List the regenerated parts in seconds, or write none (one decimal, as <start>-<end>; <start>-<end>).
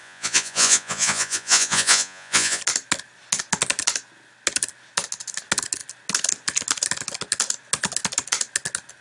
0.0-2.6